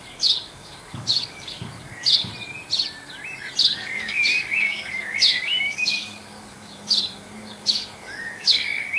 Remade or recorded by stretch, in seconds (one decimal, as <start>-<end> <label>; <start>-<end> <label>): 0.0-2.3 remade; 2.3-3.6 recorded; 3.6-9.0 remade